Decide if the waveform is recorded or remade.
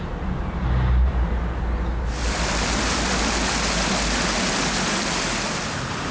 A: recorded